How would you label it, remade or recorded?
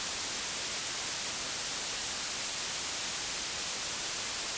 recorded